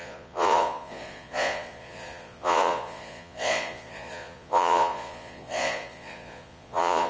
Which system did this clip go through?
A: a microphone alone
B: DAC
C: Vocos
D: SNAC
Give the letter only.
C